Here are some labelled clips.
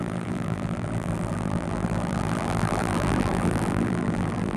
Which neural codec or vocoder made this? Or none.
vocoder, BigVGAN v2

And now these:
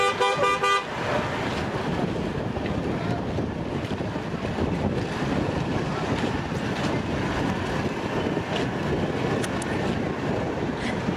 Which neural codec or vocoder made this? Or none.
none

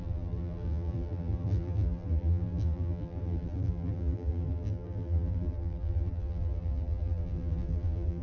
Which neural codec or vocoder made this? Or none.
vocoder, BigVGAN v2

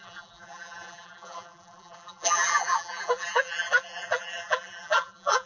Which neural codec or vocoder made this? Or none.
vocoder, BigVGAN v2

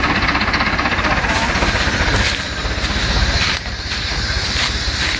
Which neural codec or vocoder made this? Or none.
none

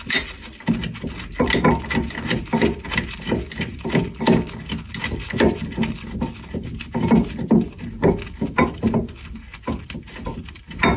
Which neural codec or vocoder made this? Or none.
none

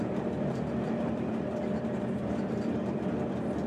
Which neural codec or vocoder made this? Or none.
none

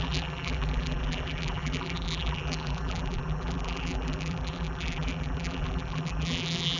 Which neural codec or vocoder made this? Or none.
vocoder, BigVGAN v2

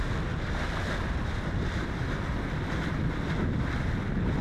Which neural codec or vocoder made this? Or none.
none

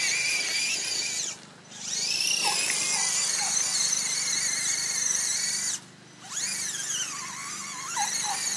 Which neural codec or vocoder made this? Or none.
none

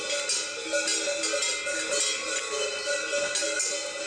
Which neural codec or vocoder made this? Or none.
none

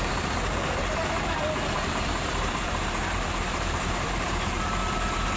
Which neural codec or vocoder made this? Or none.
vocoder, BigVGAN v2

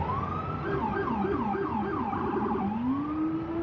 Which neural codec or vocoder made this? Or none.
none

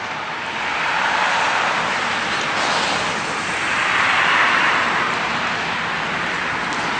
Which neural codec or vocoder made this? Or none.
vocoder, BigVGAN v2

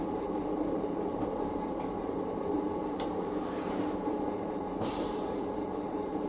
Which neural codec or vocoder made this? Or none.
vocoder, BigVGAN v2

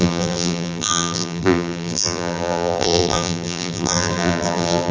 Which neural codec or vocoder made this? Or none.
vocoder, BigVGAN v2